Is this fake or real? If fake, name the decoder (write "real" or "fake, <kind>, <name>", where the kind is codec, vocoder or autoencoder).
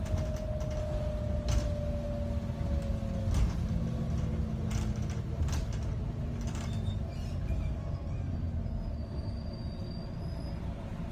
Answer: real